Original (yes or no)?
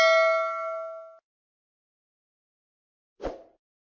yes